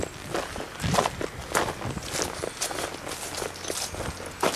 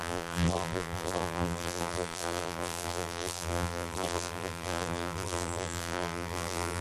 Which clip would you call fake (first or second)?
second